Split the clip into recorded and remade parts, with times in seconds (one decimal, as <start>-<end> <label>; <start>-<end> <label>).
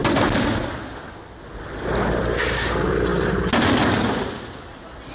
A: 0.0-5.1 recorded